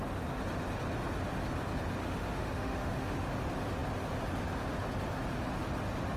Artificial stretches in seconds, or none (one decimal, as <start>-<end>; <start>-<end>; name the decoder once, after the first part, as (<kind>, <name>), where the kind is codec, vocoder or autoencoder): 2.0-3.4 (autoencoder, DAC-VAE)